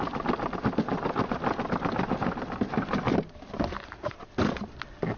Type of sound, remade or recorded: recorded